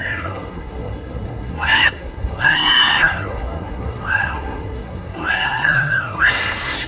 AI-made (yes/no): yes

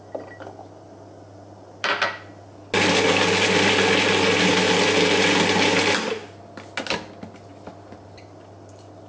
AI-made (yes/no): no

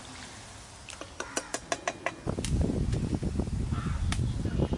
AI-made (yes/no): no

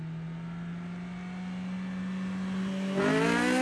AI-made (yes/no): no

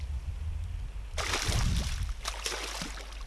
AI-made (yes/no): no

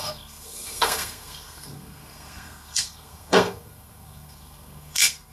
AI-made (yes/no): yes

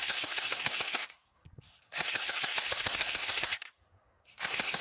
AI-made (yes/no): yes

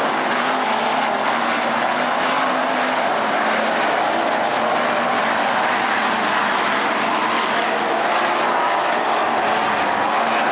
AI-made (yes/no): no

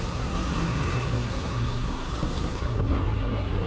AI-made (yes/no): yes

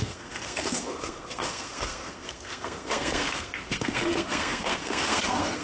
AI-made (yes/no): yes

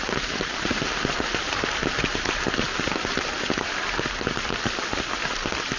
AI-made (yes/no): no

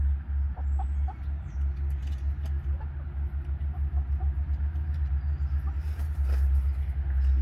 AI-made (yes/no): no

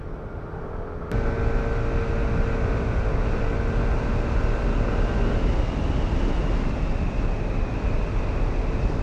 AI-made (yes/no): no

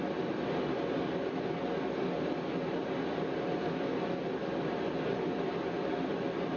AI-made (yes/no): no